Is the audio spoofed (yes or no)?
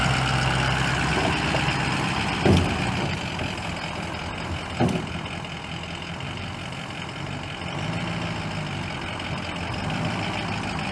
no